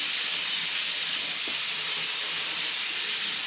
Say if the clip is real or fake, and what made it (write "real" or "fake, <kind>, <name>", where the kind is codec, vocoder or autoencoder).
real